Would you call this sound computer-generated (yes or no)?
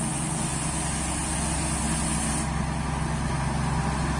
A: no